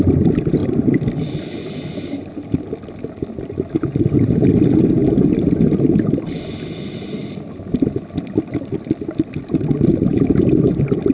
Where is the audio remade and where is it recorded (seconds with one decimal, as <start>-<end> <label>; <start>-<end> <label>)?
0.0-11.1 recorded